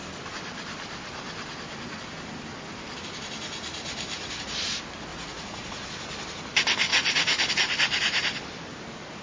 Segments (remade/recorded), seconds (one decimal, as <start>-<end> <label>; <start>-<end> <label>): 0.0-5.1 recorded; 5.1-5.9 remade; 5.9-6.9 recorded; 6.9-7.5 remade; 7.5-9.2 recorded